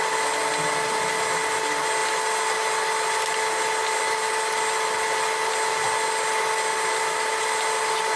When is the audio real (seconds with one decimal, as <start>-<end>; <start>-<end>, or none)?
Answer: 0.0-8.2